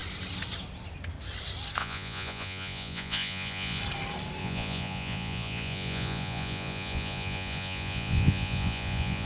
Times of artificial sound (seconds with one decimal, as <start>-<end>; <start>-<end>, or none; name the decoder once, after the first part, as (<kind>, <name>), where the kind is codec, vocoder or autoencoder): 1.8-3.8 (vocoder, Vocos); 4.4-9.3